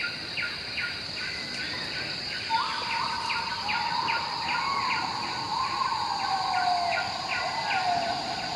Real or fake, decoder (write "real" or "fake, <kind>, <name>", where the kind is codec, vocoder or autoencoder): fake, vocoder, BigVGAN v2